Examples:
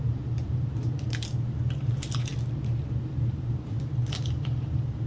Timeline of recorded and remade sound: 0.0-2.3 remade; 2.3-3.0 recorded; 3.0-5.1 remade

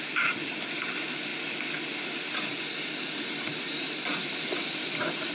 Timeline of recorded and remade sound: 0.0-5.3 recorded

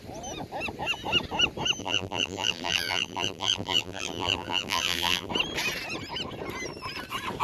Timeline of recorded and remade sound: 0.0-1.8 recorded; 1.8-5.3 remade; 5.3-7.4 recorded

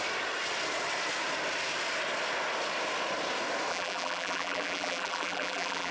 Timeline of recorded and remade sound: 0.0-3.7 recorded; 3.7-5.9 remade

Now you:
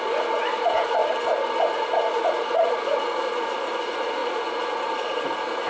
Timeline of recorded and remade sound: 0.0-1.0 remade; 1.0-2.1 recorded; 2.1-5.7 remade

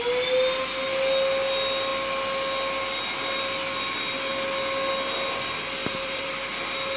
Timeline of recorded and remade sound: 0.0-5.8 recorded; 5.8-6.3 remade; 6.3-7.0 recorded